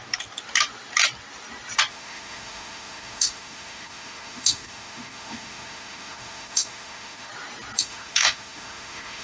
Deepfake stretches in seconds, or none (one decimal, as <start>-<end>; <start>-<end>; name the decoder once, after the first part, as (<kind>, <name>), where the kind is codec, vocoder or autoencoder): 1.9-7.3 (autoencoder, DAC-VAE); 7.8-9.2